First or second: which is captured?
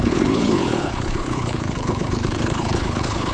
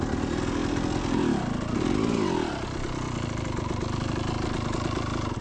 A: second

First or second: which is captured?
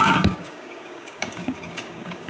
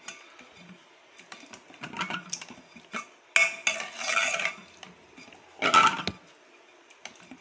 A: second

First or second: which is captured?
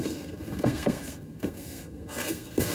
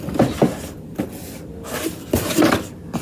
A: second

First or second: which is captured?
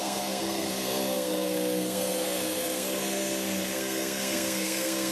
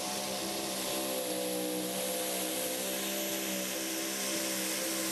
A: second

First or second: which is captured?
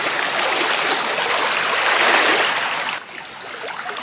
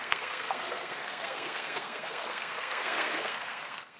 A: first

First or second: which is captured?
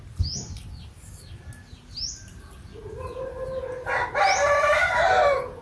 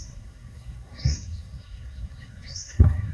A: first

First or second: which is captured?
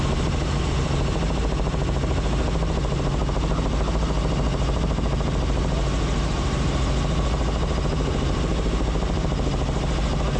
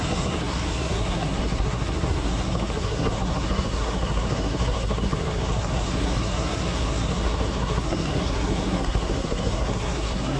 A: first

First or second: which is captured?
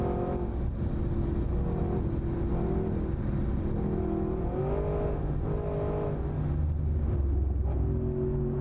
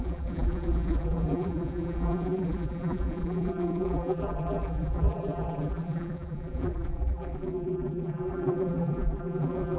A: first